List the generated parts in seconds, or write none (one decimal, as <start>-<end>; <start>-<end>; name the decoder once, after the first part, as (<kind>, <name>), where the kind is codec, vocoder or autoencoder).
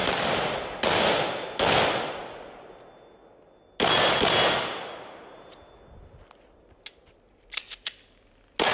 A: none